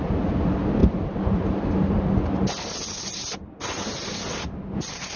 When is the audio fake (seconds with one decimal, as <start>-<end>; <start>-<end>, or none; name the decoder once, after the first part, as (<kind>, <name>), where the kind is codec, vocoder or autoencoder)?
none